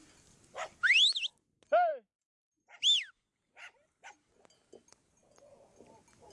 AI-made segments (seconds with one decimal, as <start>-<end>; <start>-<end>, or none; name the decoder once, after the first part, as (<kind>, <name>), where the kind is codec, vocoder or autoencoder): none